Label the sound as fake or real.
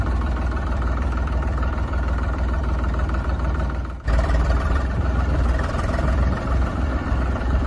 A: fake